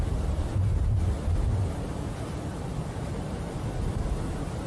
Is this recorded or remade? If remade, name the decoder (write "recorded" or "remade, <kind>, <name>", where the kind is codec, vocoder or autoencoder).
recorded